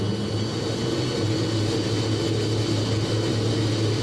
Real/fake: real